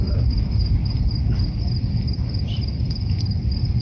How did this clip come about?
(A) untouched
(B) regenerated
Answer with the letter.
A